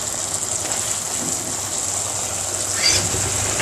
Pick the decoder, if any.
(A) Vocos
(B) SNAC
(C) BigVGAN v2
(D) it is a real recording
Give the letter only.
D